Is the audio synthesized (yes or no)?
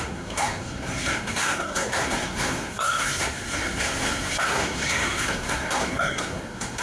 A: yes